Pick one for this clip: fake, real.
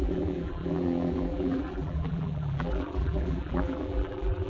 fake